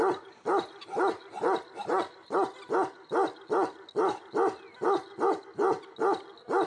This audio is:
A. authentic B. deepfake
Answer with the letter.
A